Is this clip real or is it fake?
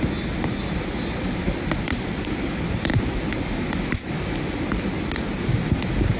real